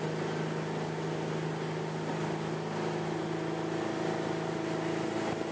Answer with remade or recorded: recorded